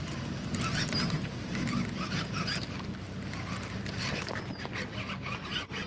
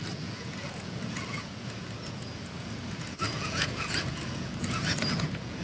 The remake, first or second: second